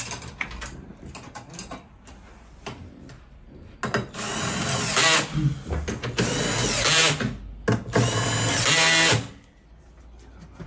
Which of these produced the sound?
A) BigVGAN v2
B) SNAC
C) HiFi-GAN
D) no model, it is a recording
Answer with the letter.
D